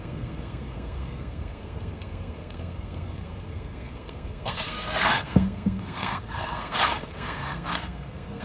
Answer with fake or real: fake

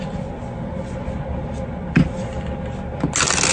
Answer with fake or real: real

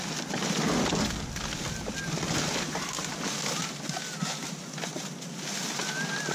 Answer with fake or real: real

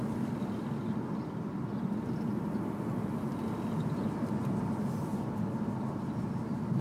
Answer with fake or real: real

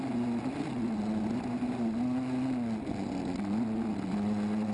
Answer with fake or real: real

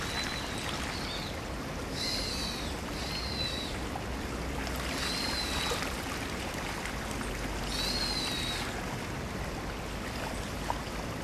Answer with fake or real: real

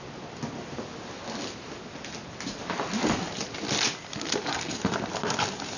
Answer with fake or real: real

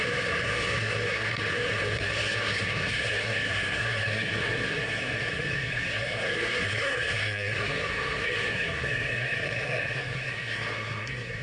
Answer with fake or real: fake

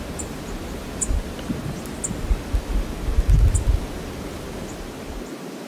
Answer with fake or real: real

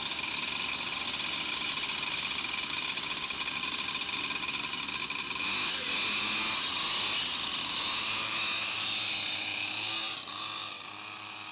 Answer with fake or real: real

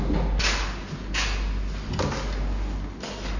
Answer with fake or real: real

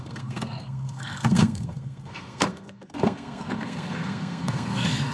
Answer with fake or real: fake